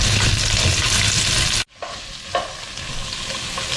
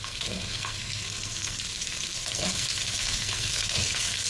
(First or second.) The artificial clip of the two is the second